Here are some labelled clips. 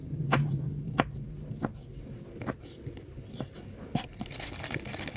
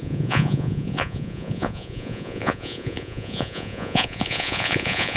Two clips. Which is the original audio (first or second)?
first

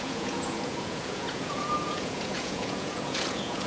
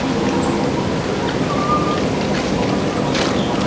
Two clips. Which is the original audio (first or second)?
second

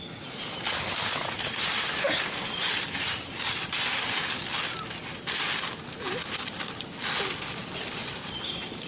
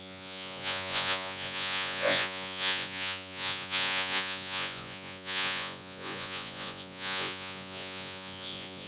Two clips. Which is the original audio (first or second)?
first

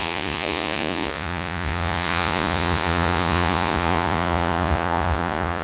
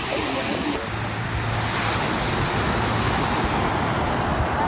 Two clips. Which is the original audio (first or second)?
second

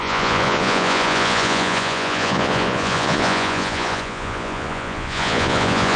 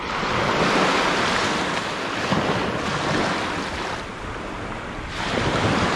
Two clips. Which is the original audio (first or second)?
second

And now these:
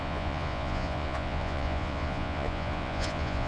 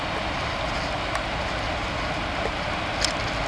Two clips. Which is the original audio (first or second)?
second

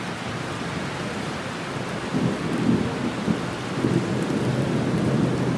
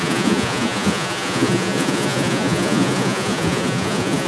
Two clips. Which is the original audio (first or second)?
first